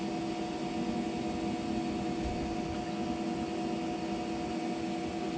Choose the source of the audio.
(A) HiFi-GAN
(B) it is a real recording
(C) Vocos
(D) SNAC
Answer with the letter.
B